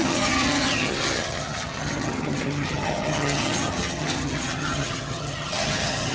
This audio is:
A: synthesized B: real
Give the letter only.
A